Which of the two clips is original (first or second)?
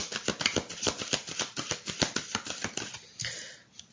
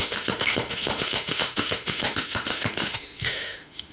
first